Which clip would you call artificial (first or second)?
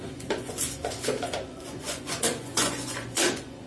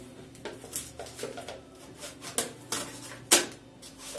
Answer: first